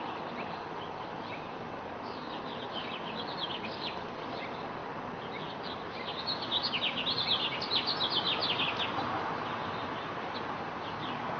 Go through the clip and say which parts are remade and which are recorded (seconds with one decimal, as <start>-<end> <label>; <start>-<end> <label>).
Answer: 0.0-11.4 recorded